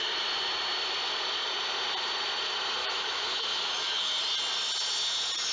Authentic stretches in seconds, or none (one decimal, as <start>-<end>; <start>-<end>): 0.0-2.8; 4.2-5.5